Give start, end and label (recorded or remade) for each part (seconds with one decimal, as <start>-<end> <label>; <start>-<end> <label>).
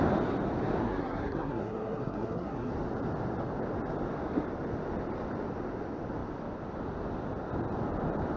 0.0-0.8 recorded; 0.8-2.7 remade; 2.7-8.4 recorded